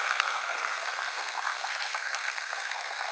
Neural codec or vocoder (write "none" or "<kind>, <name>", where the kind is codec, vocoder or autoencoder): codec, SNAC